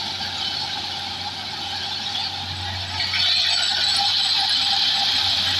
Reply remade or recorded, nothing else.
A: recorded